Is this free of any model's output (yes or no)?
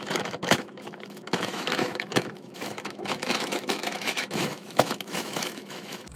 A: no